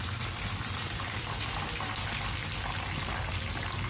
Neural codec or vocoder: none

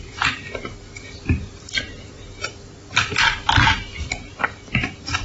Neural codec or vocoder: none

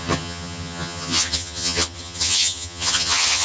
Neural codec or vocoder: vocoder, HiFi-GAN